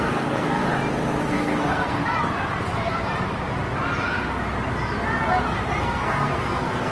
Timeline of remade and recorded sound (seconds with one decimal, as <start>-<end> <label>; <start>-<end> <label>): 0.0-0.6 remade; 0.6-1.2 recorded; 1.2-2.0 remade; 2.0-5.8 recorded; 5.8-6.9 remade